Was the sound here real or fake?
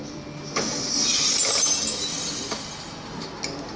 real